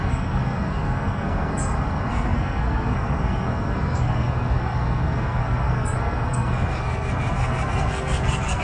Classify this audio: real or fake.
fake